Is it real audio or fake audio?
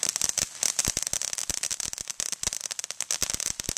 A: real